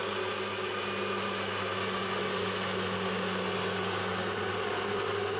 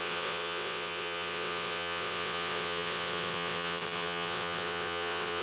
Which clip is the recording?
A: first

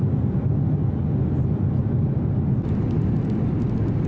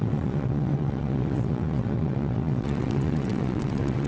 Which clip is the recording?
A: first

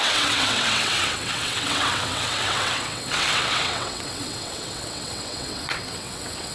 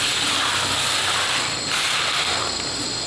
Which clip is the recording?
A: second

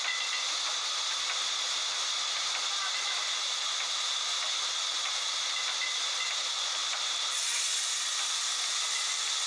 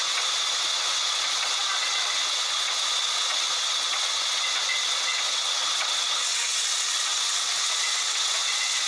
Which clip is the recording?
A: first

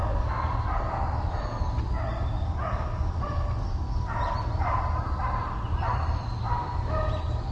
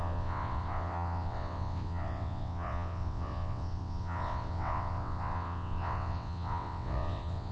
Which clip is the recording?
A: first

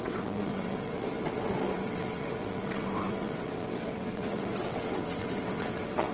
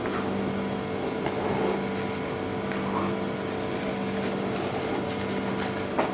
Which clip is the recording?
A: second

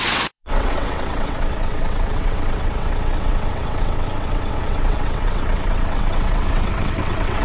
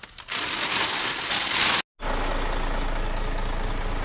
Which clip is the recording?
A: second